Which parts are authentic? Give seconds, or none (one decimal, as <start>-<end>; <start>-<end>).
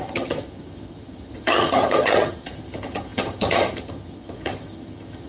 none